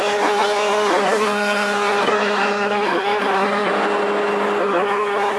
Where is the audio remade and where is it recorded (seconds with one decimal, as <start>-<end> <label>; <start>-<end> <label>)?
0.0-3.7 remade; 3.7-4.6 recorded; 4.6-5.4 remade